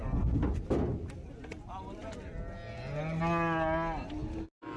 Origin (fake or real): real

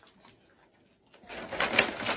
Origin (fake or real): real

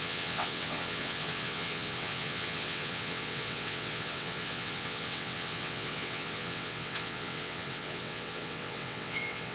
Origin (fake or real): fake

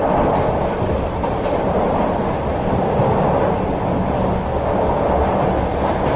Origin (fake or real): real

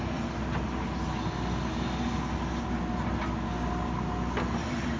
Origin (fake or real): real